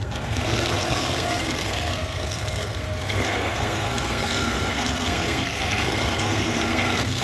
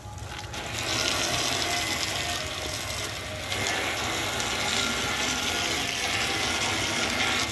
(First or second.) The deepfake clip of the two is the first